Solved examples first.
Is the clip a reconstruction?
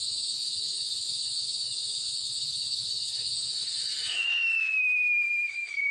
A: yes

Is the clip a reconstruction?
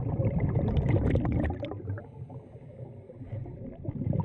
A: no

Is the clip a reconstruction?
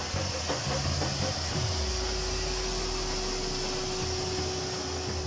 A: no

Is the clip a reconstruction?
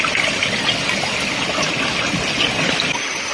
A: no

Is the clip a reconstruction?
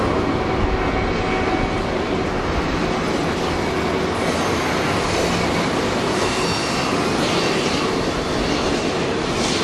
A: no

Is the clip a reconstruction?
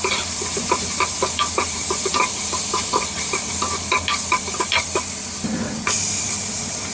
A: no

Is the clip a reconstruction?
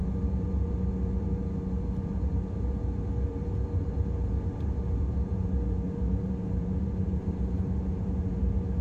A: yes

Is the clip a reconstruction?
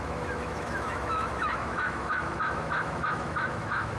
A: yes